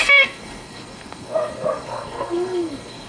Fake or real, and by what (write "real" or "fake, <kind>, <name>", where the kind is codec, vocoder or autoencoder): fake, codec, SNAC